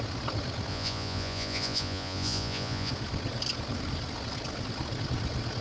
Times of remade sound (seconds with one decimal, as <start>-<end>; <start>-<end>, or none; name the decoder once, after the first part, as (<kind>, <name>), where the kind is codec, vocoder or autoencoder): 0.7-2.9 (vocoder, Vocos)